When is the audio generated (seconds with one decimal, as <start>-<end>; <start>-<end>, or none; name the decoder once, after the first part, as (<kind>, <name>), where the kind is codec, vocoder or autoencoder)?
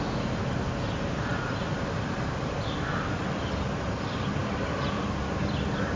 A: 1.3-3.6 (vocoder, BigVGAN v2); 4.4-5.0